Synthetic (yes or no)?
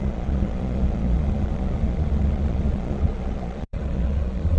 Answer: yes